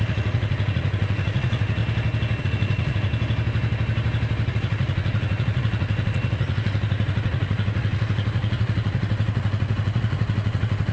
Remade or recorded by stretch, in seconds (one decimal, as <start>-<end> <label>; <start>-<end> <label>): 0.0-1.8 remade; 1.8-2.4 recorded; 2.4-3.1 remade; 3.1-4.5 recorded; 4.5-10.9 remade